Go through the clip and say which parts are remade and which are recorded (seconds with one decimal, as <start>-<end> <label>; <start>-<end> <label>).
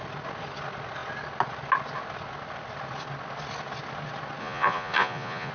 0.0-4.4 recorded; 4.4-5.5 remade